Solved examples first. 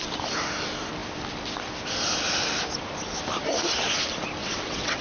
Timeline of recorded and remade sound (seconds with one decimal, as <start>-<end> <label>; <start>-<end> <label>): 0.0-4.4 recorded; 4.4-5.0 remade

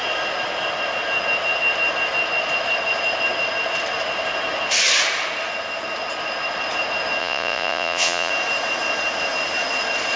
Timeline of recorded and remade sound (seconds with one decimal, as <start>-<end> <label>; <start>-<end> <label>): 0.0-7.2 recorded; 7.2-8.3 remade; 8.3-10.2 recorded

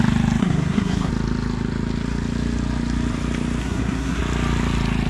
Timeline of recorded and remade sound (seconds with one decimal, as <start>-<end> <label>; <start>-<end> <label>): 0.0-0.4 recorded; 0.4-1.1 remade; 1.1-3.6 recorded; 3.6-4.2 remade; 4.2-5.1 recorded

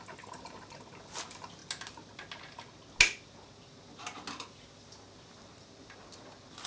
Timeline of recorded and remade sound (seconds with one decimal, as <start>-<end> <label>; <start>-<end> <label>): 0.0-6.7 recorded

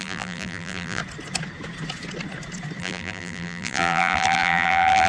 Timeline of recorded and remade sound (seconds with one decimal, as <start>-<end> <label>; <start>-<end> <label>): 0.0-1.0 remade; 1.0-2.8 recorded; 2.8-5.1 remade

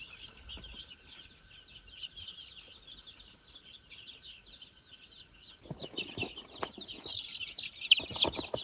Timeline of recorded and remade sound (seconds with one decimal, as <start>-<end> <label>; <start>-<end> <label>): 0.0-8.6 recorded

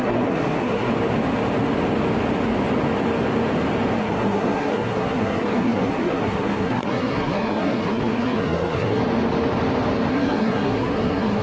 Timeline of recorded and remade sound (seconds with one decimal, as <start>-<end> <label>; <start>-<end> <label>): 0.0-0.9 remade; 0.9-4.0 recorded; 4.0-9.0 remade; 9.0-10.1 recorded; 10.1-11.4 remade

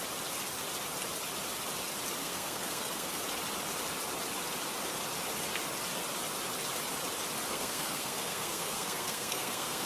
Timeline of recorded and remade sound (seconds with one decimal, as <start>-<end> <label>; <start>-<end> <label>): 0.0-2.2 recorded; 2.2-3.2 remade; 3.2-7.5 recorded; 7.5-9.9 remade